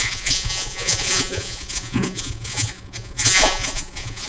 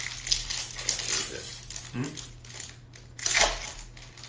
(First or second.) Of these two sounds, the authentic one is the second